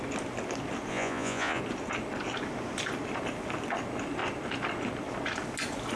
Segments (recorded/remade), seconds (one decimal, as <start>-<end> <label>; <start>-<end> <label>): 0.0-0.9 recorded; 0.9-1.6 remade; 1.6-6.0 recorded